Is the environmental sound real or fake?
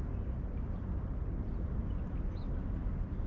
real